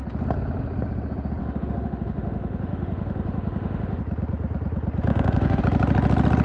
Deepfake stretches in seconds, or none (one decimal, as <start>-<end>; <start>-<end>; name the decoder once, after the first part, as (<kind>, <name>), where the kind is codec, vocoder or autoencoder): 1.4-4.0 (autoencoder, DAC-VAE); 5.1-5.6